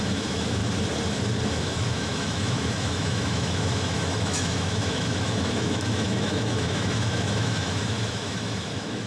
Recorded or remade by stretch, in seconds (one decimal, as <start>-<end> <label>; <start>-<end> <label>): 0.0-0.6 remade; 0.6-1.5 recorded; 1.5-9.1 remade